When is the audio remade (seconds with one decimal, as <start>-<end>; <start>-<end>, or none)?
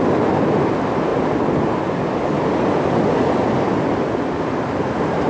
none